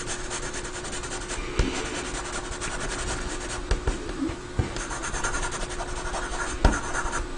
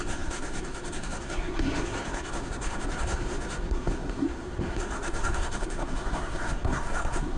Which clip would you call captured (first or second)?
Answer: first